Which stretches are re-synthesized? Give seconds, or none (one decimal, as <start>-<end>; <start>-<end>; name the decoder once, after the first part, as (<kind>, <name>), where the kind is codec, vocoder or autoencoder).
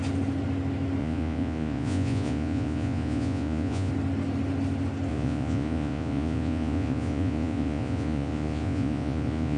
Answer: 1.0-3.9 (vocoder, Vocos); 5.1-9.6